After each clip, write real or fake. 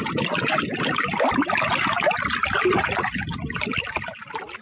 real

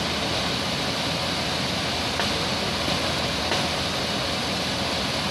real